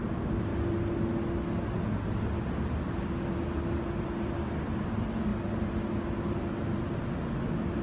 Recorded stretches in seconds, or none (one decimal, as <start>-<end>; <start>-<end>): 0.0-7.8